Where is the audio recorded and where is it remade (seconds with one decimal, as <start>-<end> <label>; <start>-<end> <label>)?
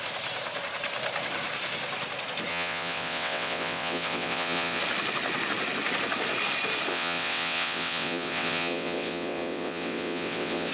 0.0-2.5 recorded; 2.5-4.8 remade; 4.8-6.9 recorded; 6.9-10.7 remade